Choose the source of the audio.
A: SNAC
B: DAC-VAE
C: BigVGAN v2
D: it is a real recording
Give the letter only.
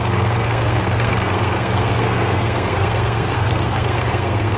A